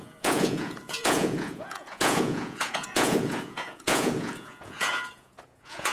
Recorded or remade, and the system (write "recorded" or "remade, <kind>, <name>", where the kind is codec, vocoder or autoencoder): remade, vocoder, Vocos